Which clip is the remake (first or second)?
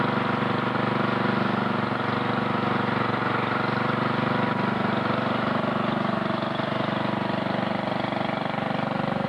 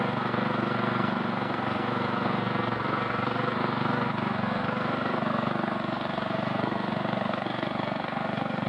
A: second